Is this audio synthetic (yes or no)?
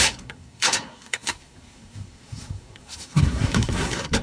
yes